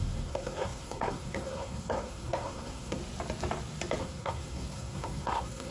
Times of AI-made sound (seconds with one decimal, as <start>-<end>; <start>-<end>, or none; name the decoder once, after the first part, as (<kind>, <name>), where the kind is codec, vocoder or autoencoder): 0.0-3.0 (codec, SNAC); 4.0-5.7